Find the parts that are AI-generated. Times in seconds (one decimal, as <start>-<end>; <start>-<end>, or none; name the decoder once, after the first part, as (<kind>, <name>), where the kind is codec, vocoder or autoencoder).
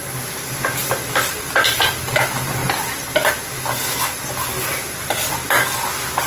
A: none